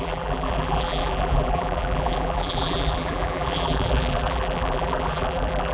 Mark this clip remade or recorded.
remade